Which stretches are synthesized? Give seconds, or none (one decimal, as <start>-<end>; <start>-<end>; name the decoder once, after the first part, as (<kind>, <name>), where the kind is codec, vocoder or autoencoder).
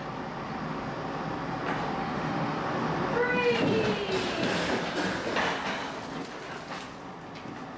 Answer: 2.0-2.6 (autoencoder, DAC-VAE)